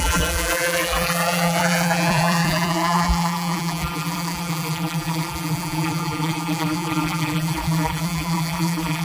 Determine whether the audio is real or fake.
fake